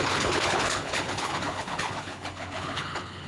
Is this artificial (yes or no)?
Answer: yes